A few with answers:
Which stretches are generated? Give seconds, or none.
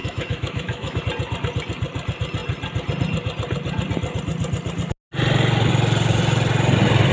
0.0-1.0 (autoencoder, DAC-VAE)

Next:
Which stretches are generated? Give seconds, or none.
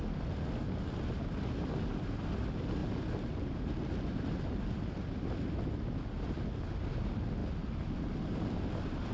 none